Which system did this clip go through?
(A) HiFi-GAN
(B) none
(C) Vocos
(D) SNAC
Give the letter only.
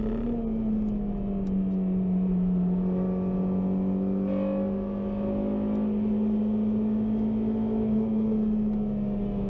B